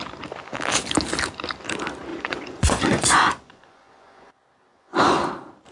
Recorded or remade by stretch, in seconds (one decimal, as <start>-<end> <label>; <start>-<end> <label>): 0.0-2.1 recorded; 2.1-4.3 remade; 4.3-4.7 recorded; 4.7-5.3 remade; 5.3-5.7 recorded